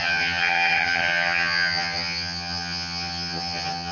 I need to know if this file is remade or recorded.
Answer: remade